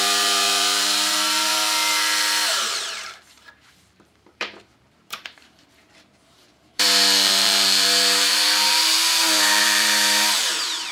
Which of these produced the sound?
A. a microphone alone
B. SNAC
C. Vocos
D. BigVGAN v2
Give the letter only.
D